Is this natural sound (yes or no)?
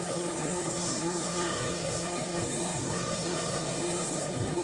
no